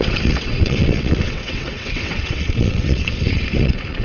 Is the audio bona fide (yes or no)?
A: no